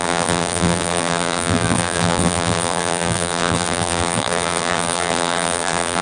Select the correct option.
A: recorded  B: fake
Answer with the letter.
B